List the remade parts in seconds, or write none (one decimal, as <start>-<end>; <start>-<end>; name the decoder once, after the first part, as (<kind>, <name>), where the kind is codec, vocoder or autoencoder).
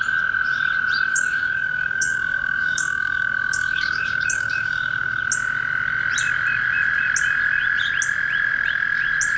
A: 1.1-5.2 (codec, DAC)